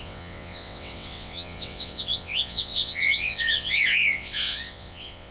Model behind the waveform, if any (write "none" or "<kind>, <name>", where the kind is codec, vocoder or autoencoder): vocoder, WaveNeXt